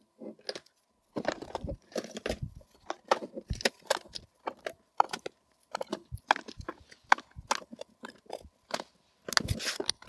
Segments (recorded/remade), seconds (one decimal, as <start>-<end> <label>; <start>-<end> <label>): 0.0-10.1 recorded